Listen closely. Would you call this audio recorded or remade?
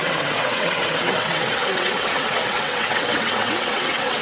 remade